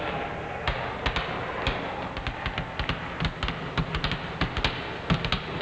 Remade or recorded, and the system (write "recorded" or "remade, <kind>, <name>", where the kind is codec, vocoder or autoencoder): recorded